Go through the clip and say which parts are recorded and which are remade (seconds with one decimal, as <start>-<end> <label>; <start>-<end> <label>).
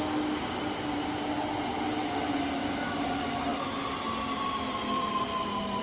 0.0-5.8 recorded